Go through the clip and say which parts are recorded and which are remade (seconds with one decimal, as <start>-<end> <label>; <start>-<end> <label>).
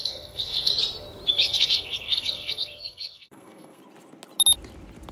0.0-0.7 remade; 0.7-1.3 recorded; 1.3-3.8 remade; 3.8-5.1 recorded